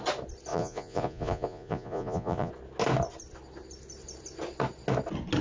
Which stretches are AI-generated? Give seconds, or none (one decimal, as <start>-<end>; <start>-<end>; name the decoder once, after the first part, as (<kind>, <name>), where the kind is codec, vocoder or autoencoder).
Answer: 0.5-2.5 (vocoder, Vocos)

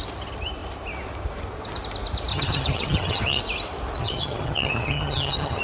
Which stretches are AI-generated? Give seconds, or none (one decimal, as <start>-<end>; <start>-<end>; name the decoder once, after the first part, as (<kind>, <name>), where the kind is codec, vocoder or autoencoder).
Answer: 2.3-3.4 (vocoder, HiFi-GAN); 4.0-5.6

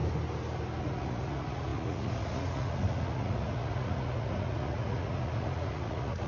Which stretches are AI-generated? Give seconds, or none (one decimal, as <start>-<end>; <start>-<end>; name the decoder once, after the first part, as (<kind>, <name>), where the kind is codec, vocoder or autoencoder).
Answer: 0.8-6.3 (vocoder, Vocos)

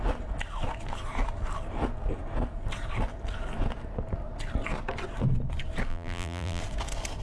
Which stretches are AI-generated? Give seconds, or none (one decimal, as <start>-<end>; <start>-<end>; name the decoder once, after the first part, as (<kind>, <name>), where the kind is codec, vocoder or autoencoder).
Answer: 5.9-6.6 (vocoder, BigVGAN v2)

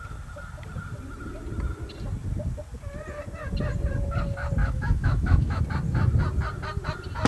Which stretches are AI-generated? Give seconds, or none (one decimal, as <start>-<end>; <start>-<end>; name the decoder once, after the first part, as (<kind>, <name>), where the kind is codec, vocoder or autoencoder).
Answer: 4.6-5.6 (autoencoder, DAC-VAE)

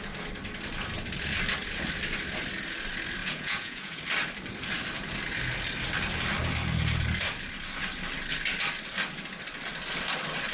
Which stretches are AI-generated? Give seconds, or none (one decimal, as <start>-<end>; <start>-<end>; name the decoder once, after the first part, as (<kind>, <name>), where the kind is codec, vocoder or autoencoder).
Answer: 3.2-4.0 (vocoder, Vocos)